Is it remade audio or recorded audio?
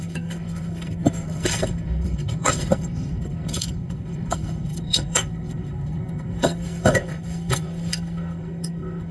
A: remade